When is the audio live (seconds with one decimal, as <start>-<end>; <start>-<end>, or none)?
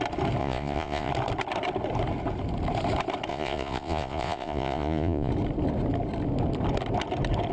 0.0-0.4; 1.1-3.3; 5.3-7.5